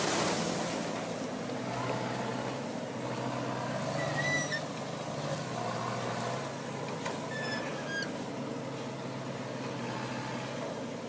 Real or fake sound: real